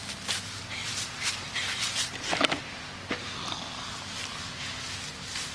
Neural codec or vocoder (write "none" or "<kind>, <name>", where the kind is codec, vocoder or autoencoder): none